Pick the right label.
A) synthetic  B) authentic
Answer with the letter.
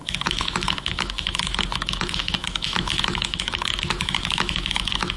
A